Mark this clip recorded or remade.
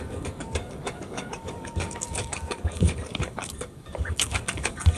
remade